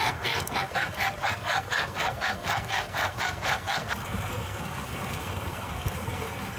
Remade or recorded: remade